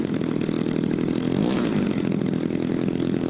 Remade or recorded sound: recorded